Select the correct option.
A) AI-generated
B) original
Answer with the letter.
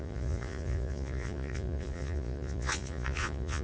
A